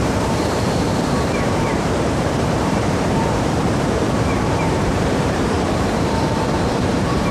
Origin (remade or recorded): remade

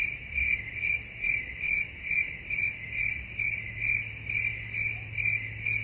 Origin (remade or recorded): recorded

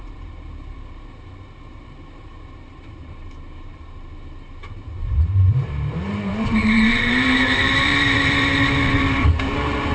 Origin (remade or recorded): remade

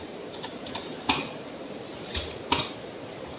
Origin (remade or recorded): remade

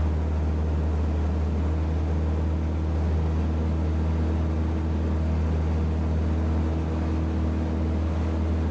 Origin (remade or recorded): recorded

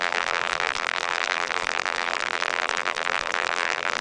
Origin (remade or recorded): remade